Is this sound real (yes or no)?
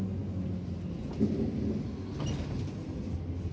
yes